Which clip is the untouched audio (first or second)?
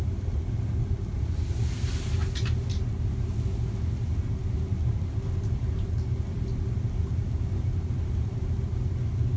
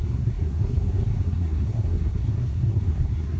first